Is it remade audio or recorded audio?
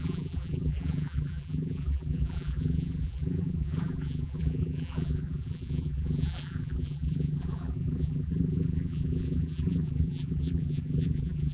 remade